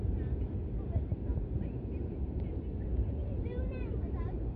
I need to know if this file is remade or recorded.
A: remade